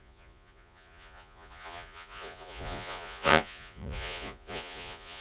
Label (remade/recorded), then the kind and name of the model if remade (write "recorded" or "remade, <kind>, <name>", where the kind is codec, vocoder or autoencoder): remade, vocoder, Vocos